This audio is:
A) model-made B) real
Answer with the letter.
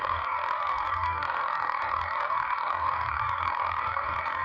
A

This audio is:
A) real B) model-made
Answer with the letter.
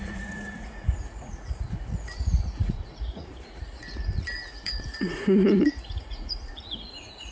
B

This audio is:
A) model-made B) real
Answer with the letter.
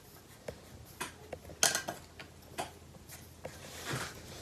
B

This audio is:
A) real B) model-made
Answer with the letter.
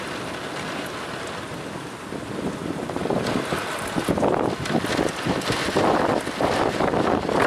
A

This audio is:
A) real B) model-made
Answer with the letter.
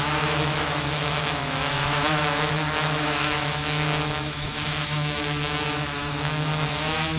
B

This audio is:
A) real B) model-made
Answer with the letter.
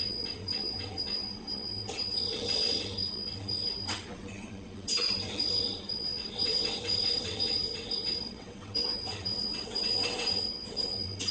B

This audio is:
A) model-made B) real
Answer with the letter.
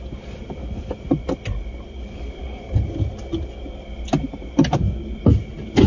B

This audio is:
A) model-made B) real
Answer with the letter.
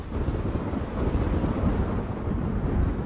B